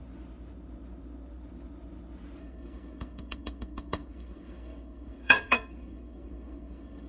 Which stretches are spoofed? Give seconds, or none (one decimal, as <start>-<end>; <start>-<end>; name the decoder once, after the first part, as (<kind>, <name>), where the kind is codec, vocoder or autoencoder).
2.4-7.1 (codec, SNAC)